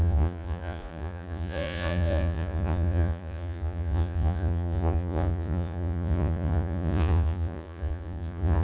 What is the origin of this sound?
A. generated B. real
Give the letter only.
A